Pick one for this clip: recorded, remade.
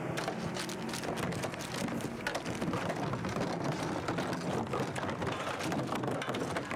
recorded